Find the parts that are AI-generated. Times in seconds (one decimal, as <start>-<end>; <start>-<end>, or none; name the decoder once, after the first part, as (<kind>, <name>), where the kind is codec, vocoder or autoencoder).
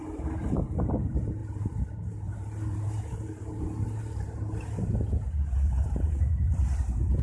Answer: 0.0-7.2 (vocoder, BigVGAN v2)